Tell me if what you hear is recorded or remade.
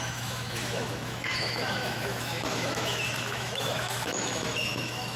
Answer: remade